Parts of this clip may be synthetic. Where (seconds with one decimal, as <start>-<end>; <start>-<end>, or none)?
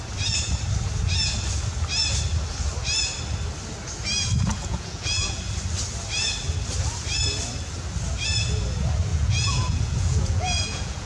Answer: 4.5-5.4; 9.1-11.1